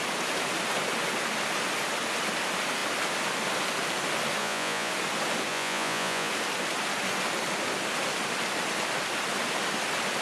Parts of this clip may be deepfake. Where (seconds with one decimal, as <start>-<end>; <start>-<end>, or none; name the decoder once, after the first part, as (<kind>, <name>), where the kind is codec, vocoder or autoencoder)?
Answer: 4.4-4.9 (vocoder, Vocos); 5.5-6.3